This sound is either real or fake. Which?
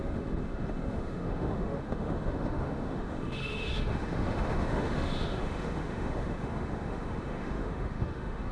fake